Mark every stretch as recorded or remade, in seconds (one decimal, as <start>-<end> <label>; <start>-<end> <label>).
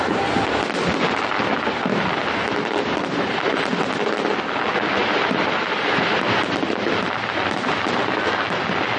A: 0.0-5.0 recorded; 5.0-6.4 remade; 6.4-9.0 recorded